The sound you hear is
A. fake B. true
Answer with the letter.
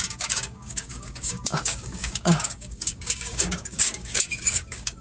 A